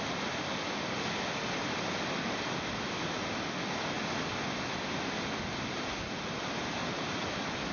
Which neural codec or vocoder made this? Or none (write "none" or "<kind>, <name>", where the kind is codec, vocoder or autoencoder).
none